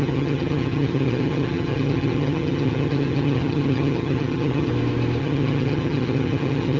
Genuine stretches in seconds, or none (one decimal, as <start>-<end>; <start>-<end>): 4.7-5.2